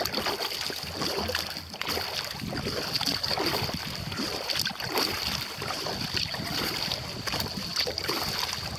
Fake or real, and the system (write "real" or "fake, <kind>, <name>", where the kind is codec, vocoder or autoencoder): real